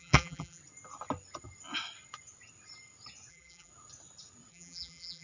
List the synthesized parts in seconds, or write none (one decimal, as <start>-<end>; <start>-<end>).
0.0-0.6; 3.3-3.7; 4.5-5.2